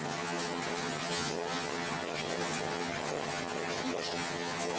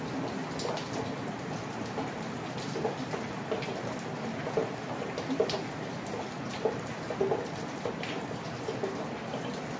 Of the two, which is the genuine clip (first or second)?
second